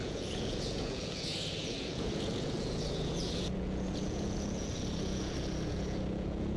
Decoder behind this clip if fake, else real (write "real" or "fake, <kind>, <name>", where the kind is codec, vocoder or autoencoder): fake, vocoder, Vocos